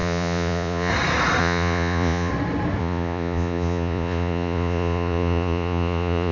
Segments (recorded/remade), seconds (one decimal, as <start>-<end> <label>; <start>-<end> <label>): 0.0-0.9 remade; 0.9-1.4 recorded; 1.4-2.3 remade; 2.3-2.8 recorded; 2.8-6.3 remade